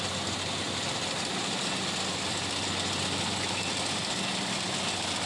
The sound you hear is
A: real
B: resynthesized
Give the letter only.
A